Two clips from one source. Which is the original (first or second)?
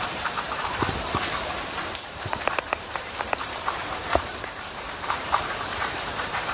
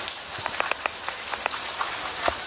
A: second